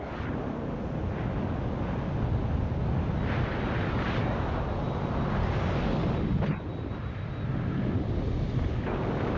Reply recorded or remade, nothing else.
recorded